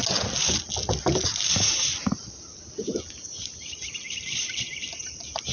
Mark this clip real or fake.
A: real